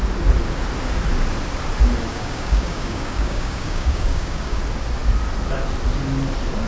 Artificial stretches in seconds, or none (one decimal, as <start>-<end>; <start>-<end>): 2.1-4.6